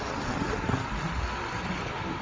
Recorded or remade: recorded